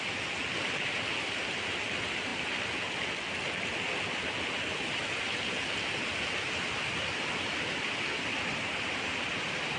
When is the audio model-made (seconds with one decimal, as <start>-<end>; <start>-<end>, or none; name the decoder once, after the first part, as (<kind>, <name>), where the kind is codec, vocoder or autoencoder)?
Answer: none